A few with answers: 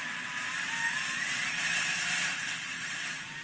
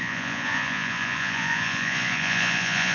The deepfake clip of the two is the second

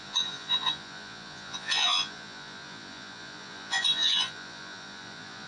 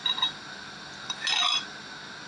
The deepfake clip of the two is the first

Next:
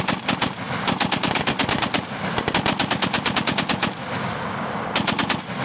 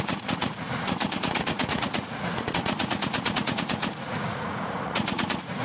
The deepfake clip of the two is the second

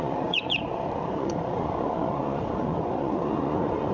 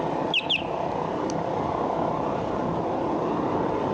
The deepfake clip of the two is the first